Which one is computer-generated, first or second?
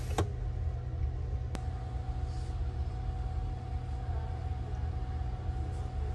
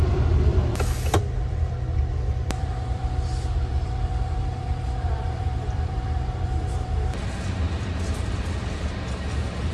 second